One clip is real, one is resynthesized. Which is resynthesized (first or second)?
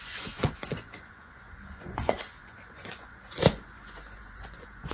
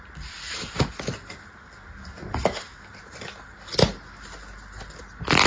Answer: first